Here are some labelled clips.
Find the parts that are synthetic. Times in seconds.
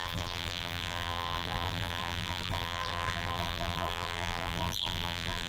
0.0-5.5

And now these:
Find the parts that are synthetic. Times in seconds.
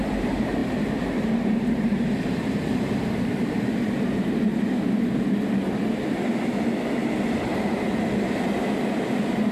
0.0-4.5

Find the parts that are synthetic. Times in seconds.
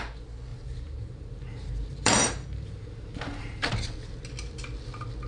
0.5-3.7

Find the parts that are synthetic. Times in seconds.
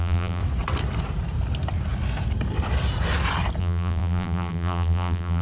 0.0-0.4; 3.6-5.4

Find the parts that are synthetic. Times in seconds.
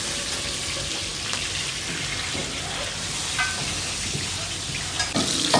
none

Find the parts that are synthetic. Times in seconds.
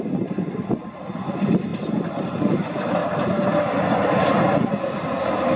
0.0-3.0; 3.6-5.6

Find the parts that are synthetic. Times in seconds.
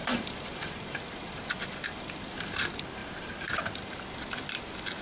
0.0-2.6; 3.0-3.6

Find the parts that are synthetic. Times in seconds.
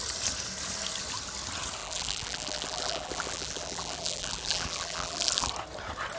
1.8-5.5